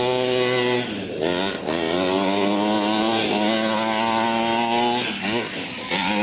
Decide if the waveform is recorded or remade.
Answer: recorded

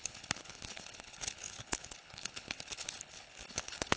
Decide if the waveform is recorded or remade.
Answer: remade